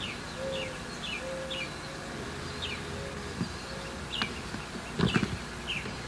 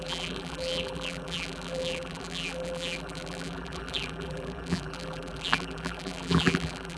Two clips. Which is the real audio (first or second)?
first